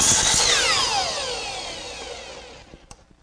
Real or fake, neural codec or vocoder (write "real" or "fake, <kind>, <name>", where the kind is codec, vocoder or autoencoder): real